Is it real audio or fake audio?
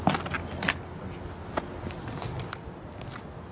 real